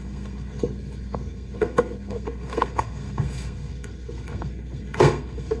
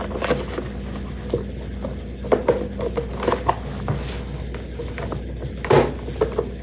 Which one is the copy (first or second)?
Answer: first